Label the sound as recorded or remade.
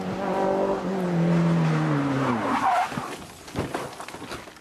recorded